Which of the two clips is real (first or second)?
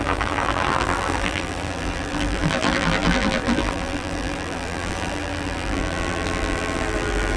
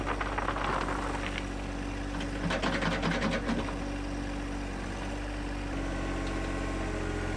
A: second